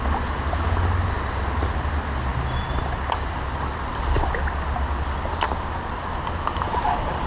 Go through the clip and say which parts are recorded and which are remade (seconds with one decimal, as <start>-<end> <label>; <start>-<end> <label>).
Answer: 0.0-2.3 recorded; 2.3-4.2 remade; 4.2-7.3 recorded